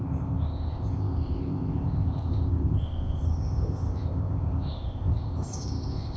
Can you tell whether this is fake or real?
fake